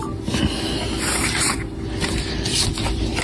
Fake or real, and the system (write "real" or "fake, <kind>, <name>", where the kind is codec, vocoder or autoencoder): real